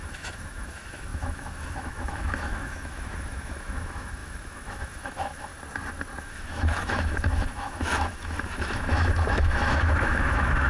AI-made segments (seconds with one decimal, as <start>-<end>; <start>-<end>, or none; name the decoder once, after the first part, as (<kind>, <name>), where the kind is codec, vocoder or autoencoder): 0.0-5.5 (autoencoder, DAC-VAE); 6.2-10.7